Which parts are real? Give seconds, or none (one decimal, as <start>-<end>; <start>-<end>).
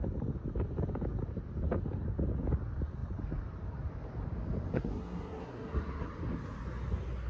0.0-4.7; 6.1-7.3